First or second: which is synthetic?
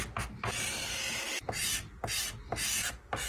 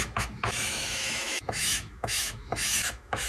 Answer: second